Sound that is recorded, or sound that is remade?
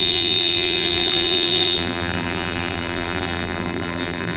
remade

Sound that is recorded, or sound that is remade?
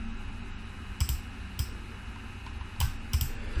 recorded